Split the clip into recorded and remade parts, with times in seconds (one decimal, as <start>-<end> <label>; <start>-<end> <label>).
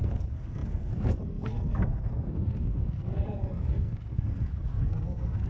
0.0-5.5 remade